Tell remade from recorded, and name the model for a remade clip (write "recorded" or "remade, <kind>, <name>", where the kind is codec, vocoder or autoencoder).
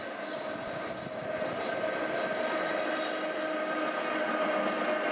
recorded